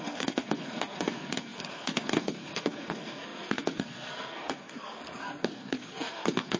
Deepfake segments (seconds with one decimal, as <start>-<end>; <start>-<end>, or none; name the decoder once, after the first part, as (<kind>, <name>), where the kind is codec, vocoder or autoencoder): 0.0-6.6 (codec, SNAC)